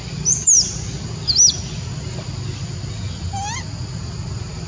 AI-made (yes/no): no